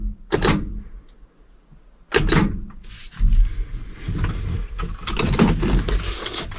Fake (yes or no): no